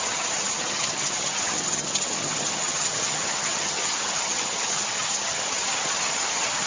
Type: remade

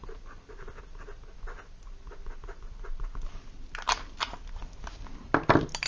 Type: recorded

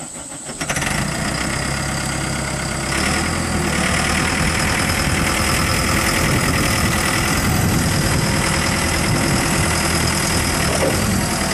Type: recorded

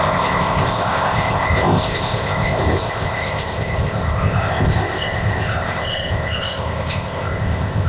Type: remade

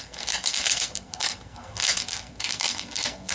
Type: remade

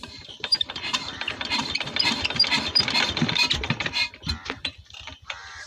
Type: remade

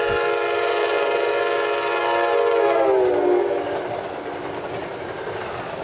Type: recorded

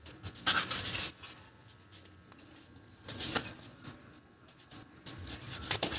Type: recorded